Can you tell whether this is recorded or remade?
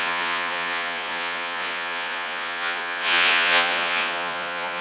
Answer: remade